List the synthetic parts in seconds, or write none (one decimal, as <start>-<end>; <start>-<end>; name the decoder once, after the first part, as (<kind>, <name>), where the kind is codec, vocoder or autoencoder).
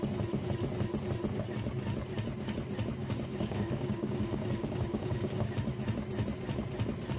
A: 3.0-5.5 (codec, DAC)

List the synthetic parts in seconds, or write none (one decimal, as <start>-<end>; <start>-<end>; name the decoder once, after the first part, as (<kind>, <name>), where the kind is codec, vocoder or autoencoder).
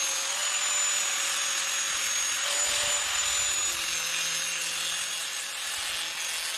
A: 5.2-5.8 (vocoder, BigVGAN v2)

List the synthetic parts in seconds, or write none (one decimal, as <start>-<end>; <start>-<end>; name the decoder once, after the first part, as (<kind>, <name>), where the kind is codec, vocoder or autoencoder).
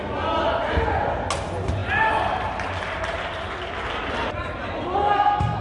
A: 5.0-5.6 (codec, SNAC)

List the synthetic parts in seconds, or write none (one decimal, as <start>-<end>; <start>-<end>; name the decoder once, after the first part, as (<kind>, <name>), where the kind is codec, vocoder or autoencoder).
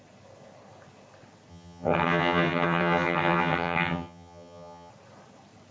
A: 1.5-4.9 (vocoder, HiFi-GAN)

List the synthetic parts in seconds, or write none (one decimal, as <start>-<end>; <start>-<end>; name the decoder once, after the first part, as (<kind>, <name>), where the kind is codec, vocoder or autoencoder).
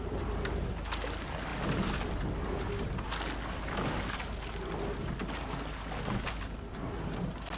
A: none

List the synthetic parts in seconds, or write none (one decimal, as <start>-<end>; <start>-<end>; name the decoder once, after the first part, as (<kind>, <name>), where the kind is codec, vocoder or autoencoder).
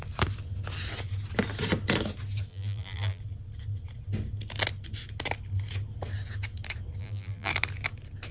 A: 2.5-3.2 (vocoder, BigVGAN v2); 7.0-7.5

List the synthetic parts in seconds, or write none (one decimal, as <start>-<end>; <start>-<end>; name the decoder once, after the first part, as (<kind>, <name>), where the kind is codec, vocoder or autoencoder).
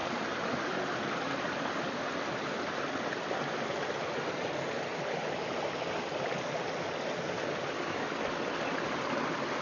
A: 0.0-1.3 (vocoder, BigVGAN v2)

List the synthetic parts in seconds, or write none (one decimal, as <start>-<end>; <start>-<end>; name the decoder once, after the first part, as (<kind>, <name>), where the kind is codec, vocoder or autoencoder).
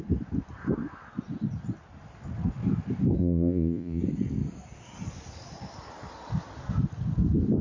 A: 3.2-4.0 (vocoder, Vocos)